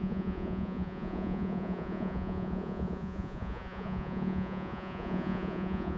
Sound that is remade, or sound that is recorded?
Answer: remade